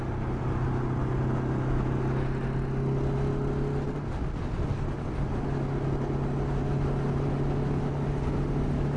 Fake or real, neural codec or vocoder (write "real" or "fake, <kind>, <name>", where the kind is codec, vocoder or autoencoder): real